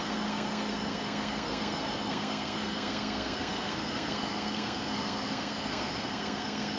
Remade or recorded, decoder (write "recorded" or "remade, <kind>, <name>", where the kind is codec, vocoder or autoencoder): remade, codec, SNAC